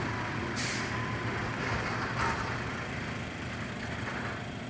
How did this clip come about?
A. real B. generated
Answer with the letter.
A